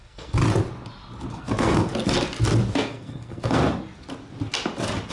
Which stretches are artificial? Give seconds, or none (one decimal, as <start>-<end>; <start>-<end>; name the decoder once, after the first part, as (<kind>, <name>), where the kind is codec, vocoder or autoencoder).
0.0-0.4 (codec, SNAC); 1.3-1.9; 2.7-3.6